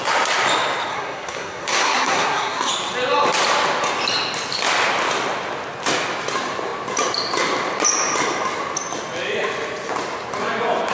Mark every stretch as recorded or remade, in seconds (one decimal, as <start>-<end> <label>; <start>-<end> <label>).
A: 0.0-0.9 recorded; 0.9-2.7 remade; 2.7-10.9 recorded